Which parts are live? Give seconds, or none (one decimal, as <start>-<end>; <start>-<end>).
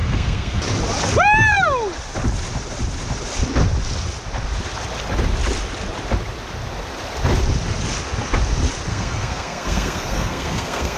0.6-8.9